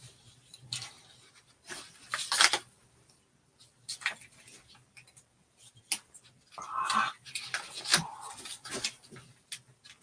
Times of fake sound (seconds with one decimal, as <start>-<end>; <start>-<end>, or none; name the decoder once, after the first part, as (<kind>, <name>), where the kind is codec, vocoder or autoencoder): none